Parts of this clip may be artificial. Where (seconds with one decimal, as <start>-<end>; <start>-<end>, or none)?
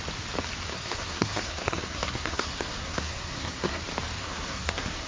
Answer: 0.7-3.8; 4.2-5.1